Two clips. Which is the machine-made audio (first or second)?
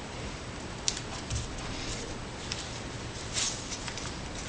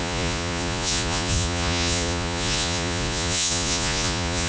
second